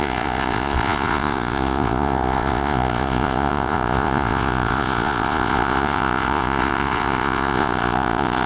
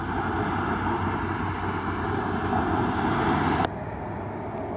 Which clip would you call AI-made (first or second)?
first